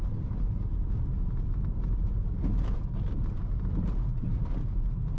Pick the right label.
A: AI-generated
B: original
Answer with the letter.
B